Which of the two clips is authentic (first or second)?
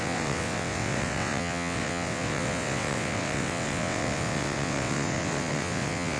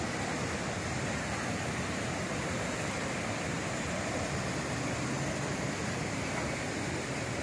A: second